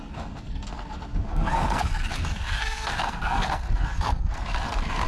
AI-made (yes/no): yes